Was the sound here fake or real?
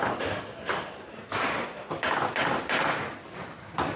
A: real